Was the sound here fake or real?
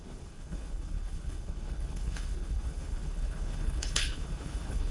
fake